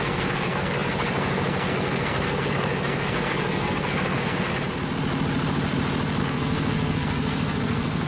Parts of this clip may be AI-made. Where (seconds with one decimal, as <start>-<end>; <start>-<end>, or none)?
0.0-4.5; 6.2-8.1